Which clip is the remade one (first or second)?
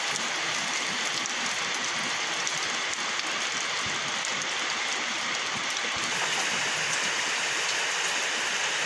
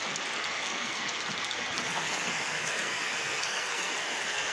second